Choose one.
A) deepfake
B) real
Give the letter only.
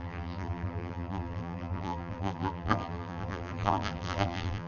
A